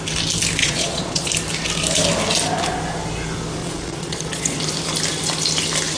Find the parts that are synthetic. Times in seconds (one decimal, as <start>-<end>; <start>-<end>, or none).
0.6-1.3; 3.6-4.6